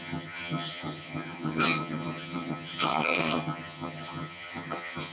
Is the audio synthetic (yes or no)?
yes